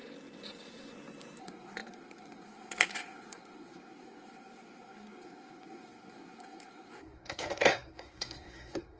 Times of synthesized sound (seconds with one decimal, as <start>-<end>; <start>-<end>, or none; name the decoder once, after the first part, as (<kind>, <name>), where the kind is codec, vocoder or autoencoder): 1.4-9.0 (codec, SNAC)